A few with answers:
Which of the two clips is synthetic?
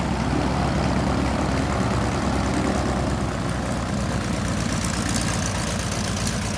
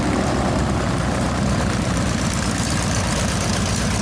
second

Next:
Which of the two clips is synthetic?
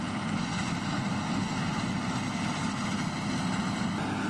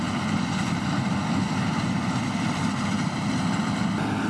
second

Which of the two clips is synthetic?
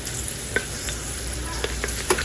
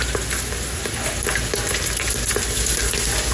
first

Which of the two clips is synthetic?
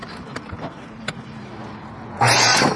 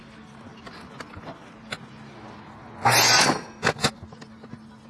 first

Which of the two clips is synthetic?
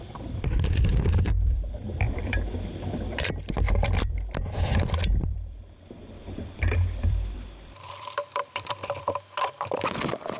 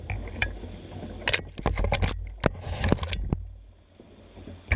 first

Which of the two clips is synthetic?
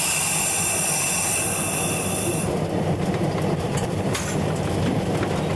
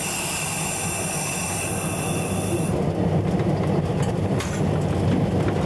first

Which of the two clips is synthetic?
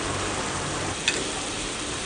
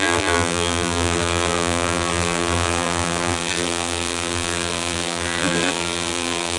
second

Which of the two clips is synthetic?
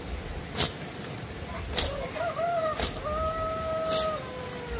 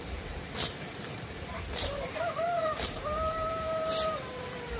second